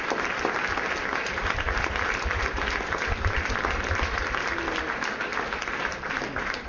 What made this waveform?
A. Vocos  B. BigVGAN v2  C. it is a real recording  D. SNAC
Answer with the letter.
C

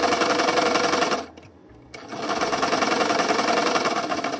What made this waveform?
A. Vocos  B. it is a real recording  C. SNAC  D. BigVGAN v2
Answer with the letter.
B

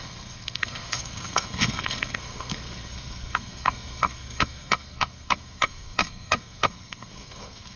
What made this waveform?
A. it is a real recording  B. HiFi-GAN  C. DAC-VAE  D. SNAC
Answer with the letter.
D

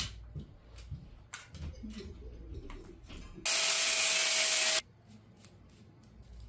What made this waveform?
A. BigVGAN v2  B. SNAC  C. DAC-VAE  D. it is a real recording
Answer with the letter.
D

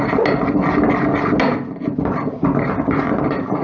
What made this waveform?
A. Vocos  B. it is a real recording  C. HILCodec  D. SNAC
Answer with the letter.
B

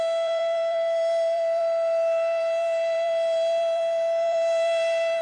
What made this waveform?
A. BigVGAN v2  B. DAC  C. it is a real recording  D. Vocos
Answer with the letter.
A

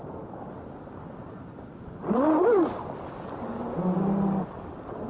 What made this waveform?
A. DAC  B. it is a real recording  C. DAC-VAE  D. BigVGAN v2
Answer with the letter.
B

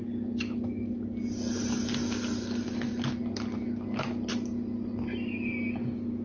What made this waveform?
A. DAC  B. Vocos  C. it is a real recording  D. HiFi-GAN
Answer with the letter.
C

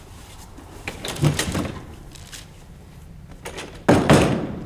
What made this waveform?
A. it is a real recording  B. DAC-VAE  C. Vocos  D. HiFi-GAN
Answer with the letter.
A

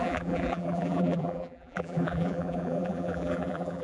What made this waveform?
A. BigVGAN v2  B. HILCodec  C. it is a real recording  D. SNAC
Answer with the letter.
A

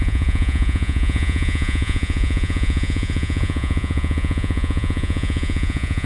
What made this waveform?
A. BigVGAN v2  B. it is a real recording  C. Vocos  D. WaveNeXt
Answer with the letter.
C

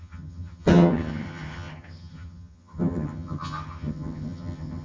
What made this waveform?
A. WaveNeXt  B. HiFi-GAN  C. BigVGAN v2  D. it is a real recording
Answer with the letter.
B